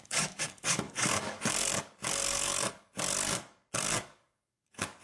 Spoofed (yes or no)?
yes